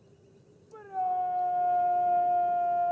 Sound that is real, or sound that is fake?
real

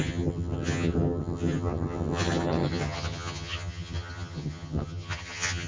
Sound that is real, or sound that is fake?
fake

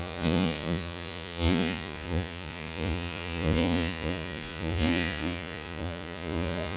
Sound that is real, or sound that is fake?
fake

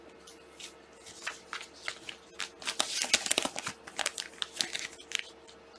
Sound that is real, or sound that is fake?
real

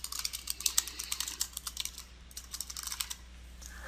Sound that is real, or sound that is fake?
real